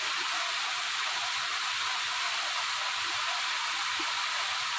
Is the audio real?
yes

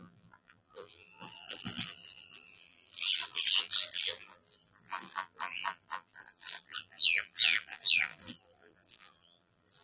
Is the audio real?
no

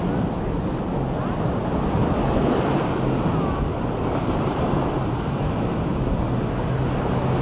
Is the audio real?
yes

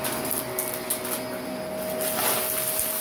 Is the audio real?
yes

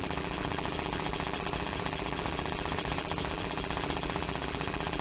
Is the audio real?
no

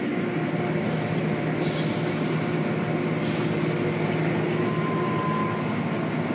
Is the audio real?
yes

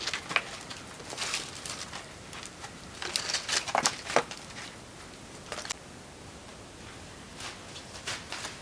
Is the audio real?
yes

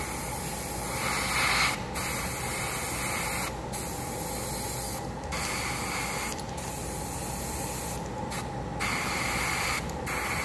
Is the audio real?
yes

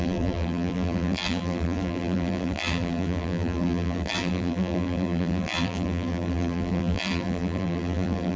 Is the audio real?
no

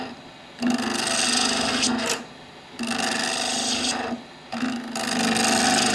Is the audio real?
yes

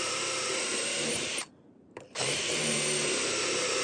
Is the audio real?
no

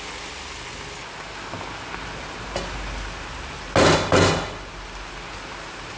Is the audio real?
yes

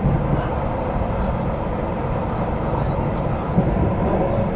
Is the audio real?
yes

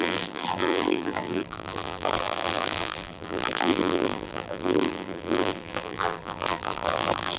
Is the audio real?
no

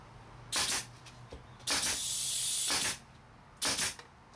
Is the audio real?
yes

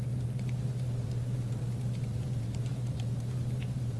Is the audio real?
no